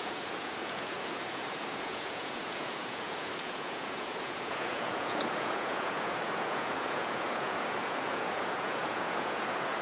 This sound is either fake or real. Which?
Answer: fake